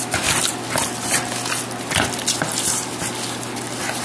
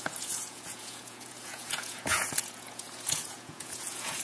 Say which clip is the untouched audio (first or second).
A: first